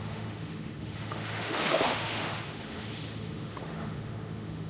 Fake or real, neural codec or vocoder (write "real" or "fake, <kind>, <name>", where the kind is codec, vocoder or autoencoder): fake, autoencoder, DAC-VAE